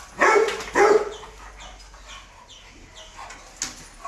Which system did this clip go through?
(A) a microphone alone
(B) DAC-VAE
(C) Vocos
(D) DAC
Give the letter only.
A